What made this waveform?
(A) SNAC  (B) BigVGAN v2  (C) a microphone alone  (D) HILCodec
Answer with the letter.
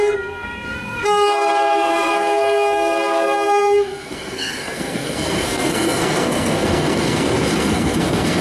A